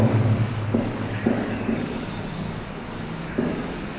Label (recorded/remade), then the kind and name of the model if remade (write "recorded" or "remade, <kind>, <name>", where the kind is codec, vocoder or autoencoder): remade, codec, DAC